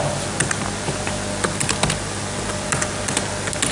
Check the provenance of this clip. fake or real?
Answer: real